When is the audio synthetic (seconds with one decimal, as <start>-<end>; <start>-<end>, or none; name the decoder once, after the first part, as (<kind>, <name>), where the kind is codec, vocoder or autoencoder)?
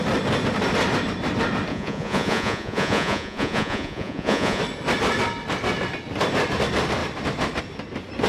1.7-4.6 (vocoder, Vocos)